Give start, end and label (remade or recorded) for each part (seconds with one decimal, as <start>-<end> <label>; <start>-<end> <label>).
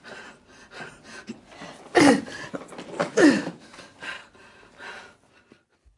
0.0-3.0 recorded; 3.0-3.7 remade; 3.7-6.0 recorded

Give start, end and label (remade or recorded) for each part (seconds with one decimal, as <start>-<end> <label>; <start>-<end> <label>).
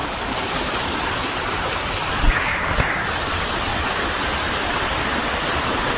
0.0-2.8 remade; 2.8-3.7 recorded; 3.7-4.2 remade; 4.2-6.0 recorded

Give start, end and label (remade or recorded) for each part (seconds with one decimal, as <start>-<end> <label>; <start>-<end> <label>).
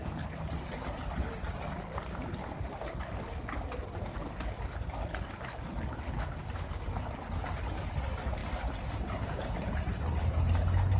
0.0-11.0 recorded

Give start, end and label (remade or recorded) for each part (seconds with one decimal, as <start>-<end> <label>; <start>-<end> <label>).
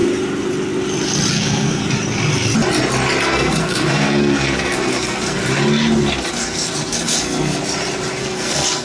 0.0-1.3 recorded; 1.3-1.8 remade; 1.8-3.2 recorded; 3.2-5.4 remade; 5.4-6.3 recorded; 6.3-7.6 remade; 7.6-8.2 recorded; 8.2-8.8 remade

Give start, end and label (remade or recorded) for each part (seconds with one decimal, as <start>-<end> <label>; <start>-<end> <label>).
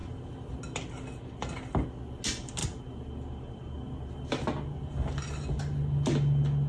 0.0-6.7 recorded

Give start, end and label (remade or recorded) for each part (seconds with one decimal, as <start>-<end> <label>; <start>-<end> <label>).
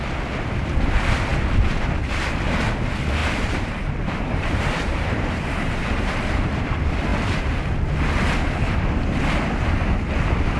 0.0-3.2 recorded; 3.2-6.4 remade; 6.4-10.6 recorded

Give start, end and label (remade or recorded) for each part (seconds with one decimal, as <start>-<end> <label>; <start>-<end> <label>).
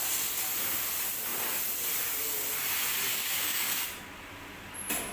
0.0-3.1 recorded; 3.1-3.8 remade; 3.8-5.1 recorded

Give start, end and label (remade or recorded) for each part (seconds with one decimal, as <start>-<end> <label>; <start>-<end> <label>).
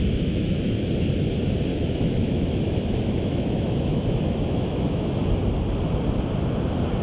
0.0-0.8 remade; 0.8-1.7 recorded; 1.7-5.2 remade; 5.2-7.0 recorded